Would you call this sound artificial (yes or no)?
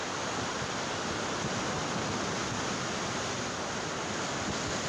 no